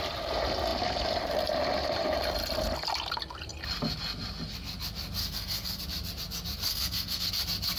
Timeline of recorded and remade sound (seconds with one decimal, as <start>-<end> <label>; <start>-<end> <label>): 0.0-5.2 recorded; 5.2-5.8 remade; 5.8-6.7 recorded; 6.7-7.3 remade; 7.3-7.8 recorded